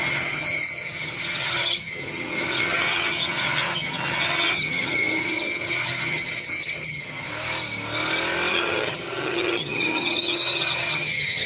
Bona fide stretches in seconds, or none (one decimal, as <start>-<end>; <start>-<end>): 7.3-8.5